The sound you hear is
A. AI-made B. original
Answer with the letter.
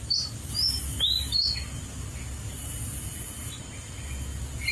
B